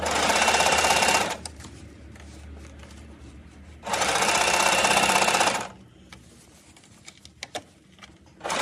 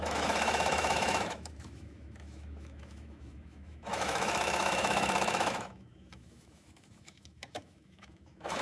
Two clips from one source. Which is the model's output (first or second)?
second